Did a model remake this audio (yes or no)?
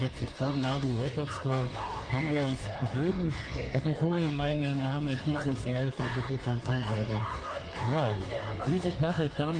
yes